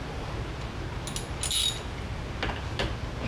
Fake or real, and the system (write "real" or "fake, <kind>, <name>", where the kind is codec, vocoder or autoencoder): real